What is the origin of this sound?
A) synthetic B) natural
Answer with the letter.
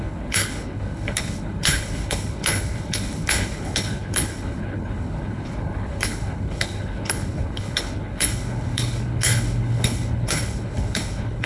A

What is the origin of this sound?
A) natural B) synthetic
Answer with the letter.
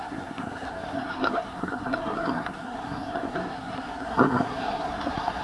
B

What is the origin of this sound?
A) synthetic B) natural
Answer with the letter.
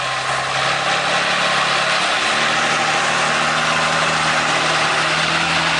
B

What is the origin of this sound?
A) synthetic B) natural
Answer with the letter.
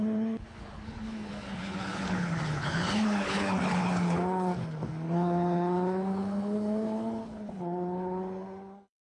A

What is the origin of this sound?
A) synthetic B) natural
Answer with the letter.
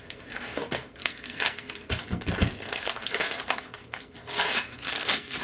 A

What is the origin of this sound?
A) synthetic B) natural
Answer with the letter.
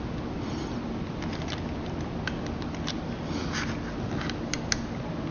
B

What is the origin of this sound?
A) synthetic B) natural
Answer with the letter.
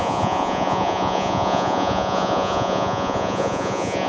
A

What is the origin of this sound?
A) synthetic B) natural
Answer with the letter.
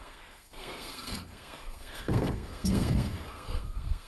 A